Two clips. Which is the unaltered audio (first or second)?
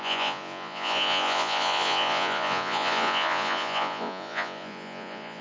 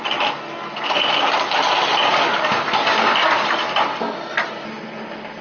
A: second